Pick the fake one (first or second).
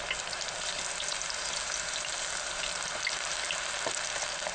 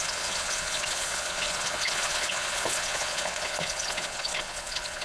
second